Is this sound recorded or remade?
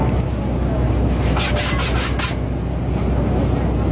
recorded